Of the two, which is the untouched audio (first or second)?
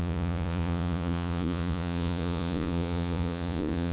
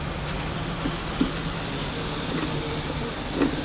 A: second